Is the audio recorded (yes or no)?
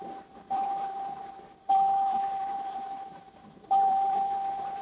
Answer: no